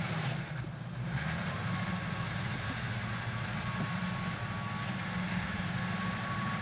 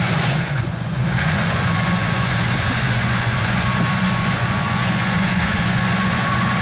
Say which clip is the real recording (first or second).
first